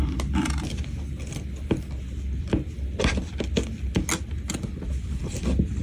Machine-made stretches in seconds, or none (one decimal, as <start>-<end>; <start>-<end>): none